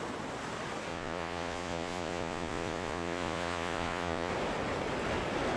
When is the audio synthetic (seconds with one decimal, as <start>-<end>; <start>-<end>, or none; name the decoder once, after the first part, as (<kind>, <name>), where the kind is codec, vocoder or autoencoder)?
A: 0.9-4.3 (vocoder, Vocos)